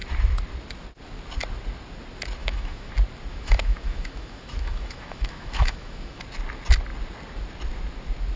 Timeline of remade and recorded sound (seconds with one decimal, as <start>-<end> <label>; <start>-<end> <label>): 0.0-2.4 recorded; 2.4-2.9 remade; 2.9-3.3 recorded; 3.3-6.2 remade; 6.2-8.4 recorded